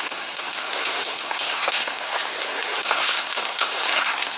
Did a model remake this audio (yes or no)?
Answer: yes